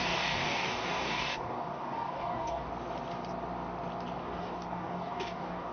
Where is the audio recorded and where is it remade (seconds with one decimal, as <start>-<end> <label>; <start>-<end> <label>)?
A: 0.0-2.7 remade; 2.7-4.2 recorded; 4.2-5.7 remade